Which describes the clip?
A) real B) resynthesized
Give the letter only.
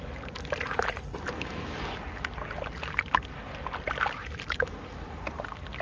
A